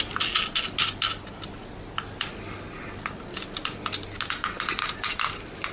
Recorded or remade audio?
recorded